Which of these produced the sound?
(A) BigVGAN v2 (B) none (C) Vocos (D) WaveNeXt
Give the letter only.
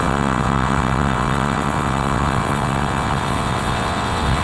D